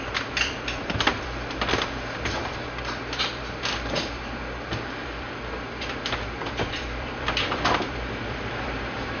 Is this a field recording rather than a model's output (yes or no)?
no